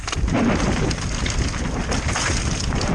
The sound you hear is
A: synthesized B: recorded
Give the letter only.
B